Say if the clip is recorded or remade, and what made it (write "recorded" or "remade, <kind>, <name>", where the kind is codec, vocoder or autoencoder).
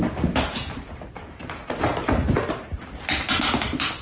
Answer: recorded